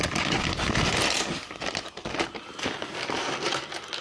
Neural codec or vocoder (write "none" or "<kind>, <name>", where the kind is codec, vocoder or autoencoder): none